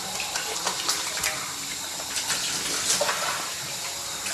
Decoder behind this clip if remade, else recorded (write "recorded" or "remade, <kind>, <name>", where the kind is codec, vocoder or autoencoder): recorded